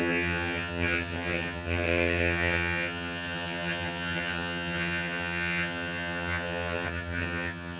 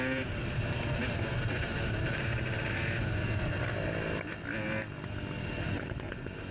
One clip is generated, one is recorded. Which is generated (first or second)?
first